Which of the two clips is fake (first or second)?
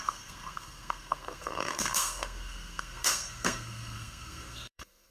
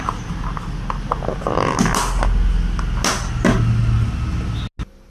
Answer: first